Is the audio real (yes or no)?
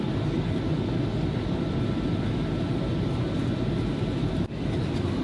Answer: yes